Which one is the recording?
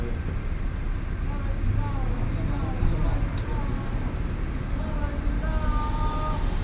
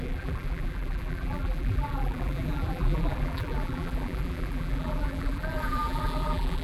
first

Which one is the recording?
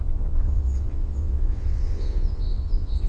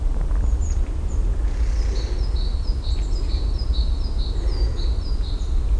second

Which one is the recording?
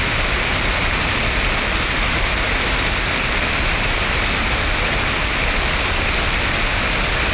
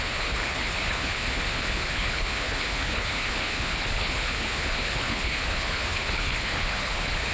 first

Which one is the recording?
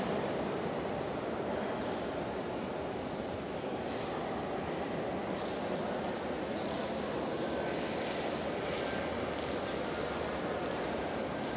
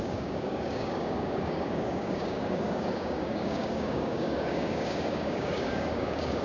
first